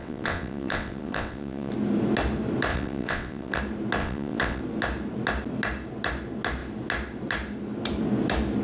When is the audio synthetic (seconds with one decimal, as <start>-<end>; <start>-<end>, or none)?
0.0-1.7; 2.7-3.6; 4.0-4.6